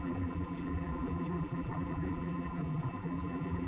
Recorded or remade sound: remade